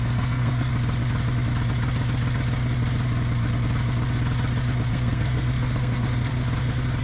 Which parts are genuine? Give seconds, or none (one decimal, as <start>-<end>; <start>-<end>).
0.7-4.9; 6.3-7.0

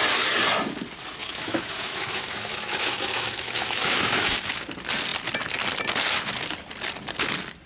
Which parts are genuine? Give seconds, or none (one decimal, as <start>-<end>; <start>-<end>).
0.0-1.2; 4.6-7.7

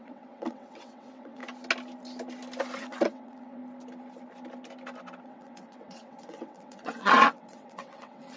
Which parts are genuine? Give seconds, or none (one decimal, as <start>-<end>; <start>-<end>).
1.4-2.8; 3.6-5.2

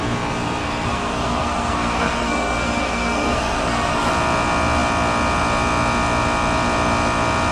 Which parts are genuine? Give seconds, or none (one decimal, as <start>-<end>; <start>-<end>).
0.0-0.6; 4.1-7.5

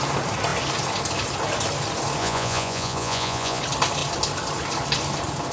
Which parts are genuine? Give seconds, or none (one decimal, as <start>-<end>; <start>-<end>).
0.0-2.2; 3.6-5.5

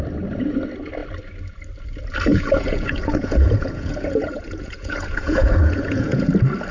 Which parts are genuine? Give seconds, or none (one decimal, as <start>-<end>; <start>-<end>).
0.0-2.3; 6.3-6.7

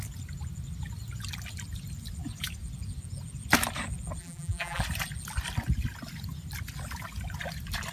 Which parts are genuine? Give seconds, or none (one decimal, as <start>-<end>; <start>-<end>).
0.0-4.2; 4.8-7.9